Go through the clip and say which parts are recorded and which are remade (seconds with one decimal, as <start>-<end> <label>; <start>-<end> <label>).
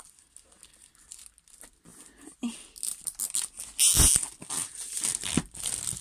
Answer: 0.0-6.0 recorded